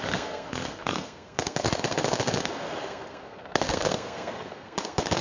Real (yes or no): no